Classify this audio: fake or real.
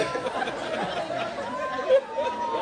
real